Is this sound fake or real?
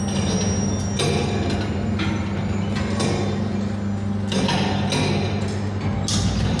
real